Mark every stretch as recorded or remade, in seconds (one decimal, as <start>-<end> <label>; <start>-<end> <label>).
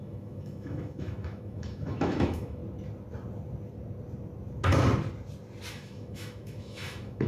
0.0-2.6 remade; 2.6-5.7 recorded; 5.7-7.3 remade